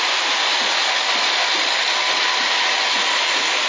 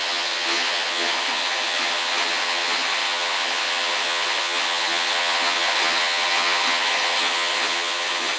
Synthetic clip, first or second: second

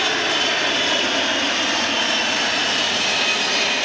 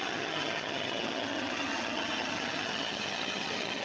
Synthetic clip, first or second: second